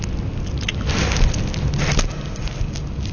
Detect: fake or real real